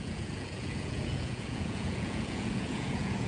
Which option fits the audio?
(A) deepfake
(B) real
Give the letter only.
A